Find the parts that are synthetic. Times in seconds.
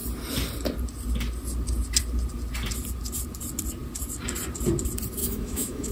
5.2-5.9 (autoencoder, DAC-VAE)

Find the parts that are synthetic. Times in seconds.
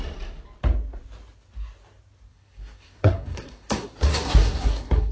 2.3-5.1 (codec, SNAC)